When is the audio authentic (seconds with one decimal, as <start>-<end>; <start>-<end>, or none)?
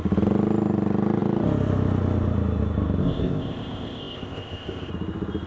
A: 0.0-3.0; 4.9-5.5